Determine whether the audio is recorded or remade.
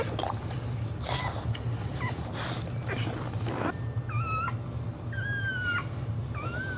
recorded